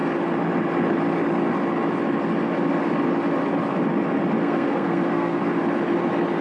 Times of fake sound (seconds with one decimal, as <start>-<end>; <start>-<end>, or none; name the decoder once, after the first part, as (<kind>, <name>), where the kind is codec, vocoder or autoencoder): 4.4-5.4 (codec, SNAC)